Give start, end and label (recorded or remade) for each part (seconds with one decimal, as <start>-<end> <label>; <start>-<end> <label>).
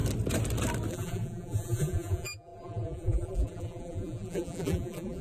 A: 0.0-0.9 recorded; 0.9-5.2 remade